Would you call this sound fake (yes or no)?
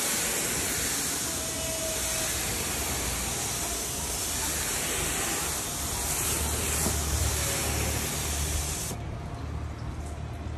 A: no